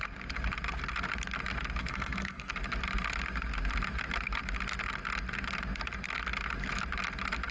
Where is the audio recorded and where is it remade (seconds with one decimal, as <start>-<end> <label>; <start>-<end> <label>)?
0.0-1.8 recorded; 1.8-2.5 remade; 2.5-7.5 recorded